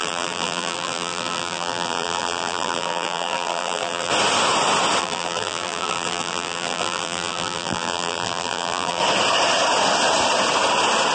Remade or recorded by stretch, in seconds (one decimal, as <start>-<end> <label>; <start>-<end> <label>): 0.0-4.1 remade; 4.1-5.0 recorded; 5.0-9.0 remade; 9.0-11.1 recorded